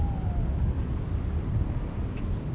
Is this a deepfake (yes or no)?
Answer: no